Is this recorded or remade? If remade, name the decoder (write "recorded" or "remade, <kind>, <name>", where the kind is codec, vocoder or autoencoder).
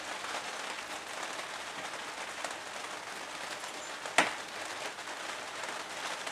recorded